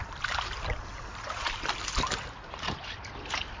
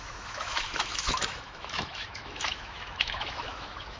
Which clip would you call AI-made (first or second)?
second